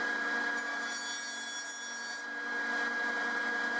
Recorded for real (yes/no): yes